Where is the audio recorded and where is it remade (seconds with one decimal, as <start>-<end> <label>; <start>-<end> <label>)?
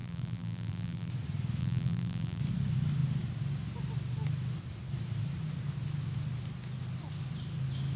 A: 0.0-1.1 remade; 1.1-1.6 recorded; 1.6-2.4 remade; 2.4-8.0 recorded